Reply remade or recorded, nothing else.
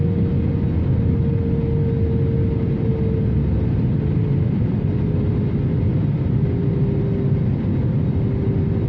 recorded